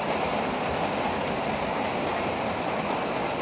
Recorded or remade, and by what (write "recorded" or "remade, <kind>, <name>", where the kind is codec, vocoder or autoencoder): recorded